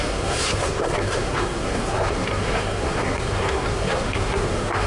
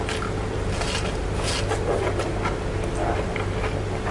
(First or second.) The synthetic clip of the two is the first